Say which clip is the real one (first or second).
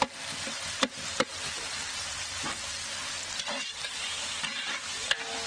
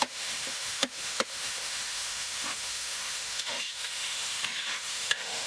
first